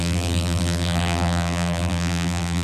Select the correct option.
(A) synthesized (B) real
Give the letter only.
A